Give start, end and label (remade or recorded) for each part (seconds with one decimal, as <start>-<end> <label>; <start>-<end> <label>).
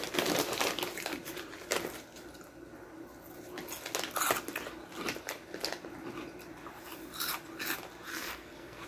0.0-8.1 recorded; 8.1-8.9 remade